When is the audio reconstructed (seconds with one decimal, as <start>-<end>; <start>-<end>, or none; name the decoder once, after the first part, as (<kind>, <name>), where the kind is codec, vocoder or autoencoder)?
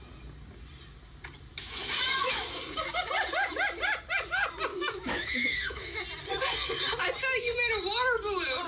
1.5-2.6 (autoencoder, DAC-VAE); 4.7-6.0